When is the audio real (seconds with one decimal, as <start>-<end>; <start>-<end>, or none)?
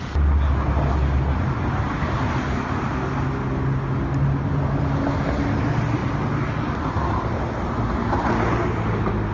0.0-9.3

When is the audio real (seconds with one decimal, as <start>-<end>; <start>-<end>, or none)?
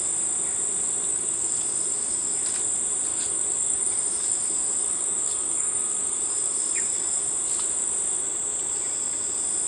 0.0-1.1; 2.4-3.1; 7.3-9.7